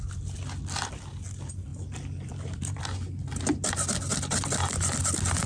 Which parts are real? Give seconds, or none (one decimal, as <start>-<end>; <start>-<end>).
0.0-1.7; 2.8-5.5